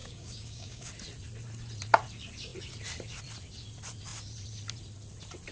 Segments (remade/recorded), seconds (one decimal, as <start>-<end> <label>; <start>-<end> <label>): 0.0-0.9 remade; 0.9-5.5 recorded